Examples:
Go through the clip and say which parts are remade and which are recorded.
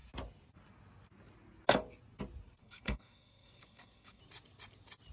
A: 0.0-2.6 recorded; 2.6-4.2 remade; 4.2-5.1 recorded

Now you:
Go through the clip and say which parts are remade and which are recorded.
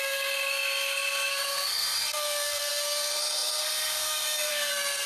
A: 0.0-5.1 remade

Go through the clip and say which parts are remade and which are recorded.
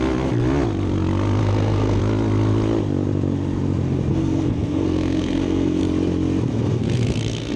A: 0.0-1.4 recorded; 1.4-2.0 remade; 2.0-4.1 recorded; 4.1-5.8 remade; 5.8-6.5 recorded; 6.5-7.6 remade